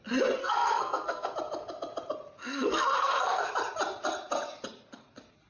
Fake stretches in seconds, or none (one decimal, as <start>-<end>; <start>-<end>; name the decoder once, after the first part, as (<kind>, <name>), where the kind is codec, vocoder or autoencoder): 0.4-1.3 (codec, SNAC); 2.4-3.5